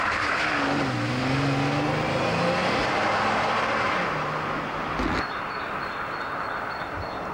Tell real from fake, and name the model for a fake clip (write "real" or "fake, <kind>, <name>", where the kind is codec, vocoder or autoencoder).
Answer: real